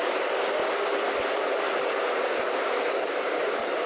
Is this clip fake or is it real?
real